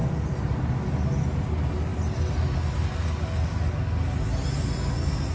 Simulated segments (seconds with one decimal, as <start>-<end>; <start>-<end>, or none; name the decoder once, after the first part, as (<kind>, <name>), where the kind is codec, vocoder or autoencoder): none